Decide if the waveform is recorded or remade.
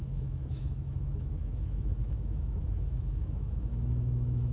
remade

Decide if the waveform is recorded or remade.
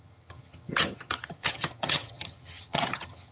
remade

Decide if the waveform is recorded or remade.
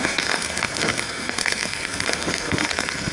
remade